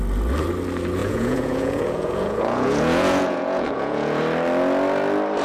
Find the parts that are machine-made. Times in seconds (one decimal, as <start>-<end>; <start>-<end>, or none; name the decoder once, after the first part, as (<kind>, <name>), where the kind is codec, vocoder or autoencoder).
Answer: 1.0-4.2 (vocoder, Vocos)